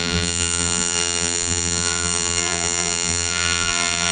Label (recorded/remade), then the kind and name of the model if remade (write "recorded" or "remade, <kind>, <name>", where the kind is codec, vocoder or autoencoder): remade, vocoder, BigVGAN v2